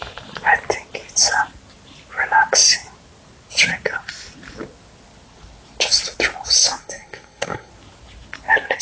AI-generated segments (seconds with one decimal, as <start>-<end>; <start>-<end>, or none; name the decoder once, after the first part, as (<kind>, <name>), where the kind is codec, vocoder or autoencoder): 6.8-7.7 (codec, SNAC)